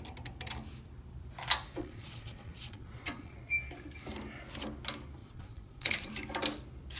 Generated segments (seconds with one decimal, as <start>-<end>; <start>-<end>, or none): 1.8-3.4; 5.2-6.1